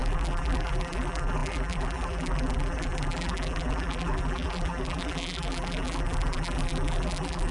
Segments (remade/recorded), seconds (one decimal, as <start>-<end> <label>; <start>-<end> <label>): 0.0-7.5 remade